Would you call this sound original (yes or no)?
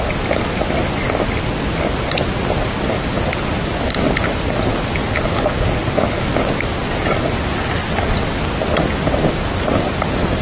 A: yes